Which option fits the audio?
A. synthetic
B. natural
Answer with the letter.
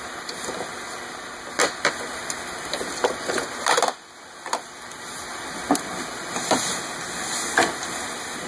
B